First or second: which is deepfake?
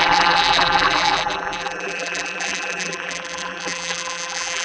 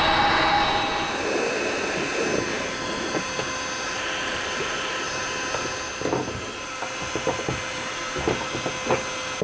first